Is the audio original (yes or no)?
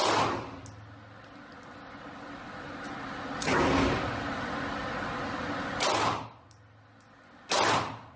yes